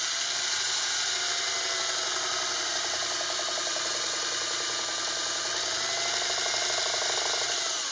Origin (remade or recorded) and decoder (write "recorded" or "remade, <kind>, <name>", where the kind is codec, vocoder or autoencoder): recorded